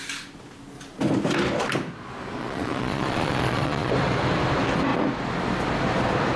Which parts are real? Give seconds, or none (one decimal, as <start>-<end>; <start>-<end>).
0.0-2.4; 3.9-6.4